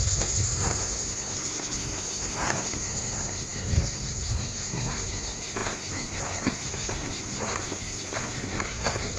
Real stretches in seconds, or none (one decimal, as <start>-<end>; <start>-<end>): none